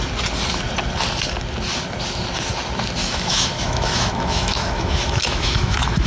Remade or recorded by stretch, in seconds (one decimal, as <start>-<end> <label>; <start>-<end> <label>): 0.0-3.0 recorded; 3.0-6.1 remade

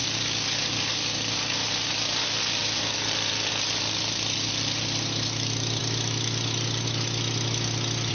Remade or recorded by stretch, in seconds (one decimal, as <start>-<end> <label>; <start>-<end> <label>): 0.0-8.1 recorded

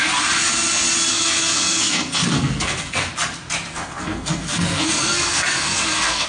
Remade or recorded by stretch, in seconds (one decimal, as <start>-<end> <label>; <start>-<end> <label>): 0.0-1.1 recorded; 1.1-3.1 remade; 3.1-3.7 recorded; 3.7-6.3 remade

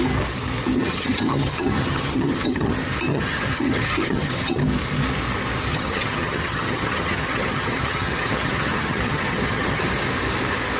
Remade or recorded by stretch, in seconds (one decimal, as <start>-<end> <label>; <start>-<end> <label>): 0.0-0.8 recorded; 0.8-2.7 remade; 2.7-3.1 recorded; 3.1-4.6 remade; 4.6-5.7 recorded; 5.7-9.9 remade; 9.9-10.8 recorded

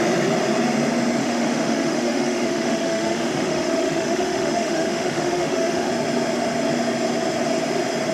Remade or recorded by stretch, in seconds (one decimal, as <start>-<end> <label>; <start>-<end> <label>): 0.0-1.2 recorded; 1.2-5.9 remade; 5.9-8.1 recorded

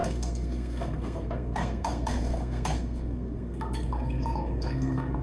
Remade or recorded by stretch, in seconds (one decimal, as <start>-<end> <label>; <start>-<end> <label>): 0.0-5.2 remade

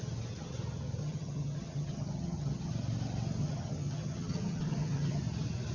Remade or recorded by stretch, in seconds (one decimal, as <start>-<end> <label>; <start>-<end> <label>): 0.0-1.0 recorded; 1.0-2.7 remade; 2.7-3.4 recorded; 3.4-5.2 remade; 5.2-5.7 recorded

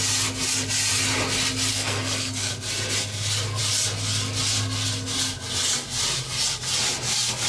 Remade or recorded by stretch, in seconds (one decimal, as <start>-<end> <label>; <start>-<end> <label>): 0.0-1.7 recorded; 1.7-2.5 remade; 2.5-7.5 recorded